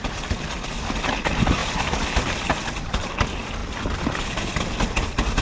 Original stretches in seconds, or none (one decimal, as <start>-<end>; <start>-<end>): 0.0-1.6; 3.2-5.4